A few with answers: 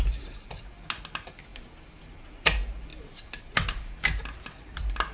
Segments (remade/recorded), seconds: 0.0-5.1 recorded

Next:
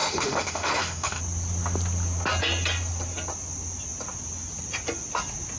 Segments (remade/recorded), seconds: 0.0-1.2 remade; 1.2-5.6 recorded